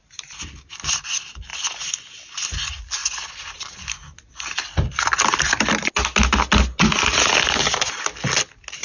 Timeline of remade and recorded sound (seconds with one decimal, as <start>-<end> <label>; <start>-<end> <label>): 0.0-8.8 recorded